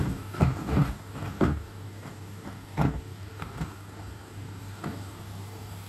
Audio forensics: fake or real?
fake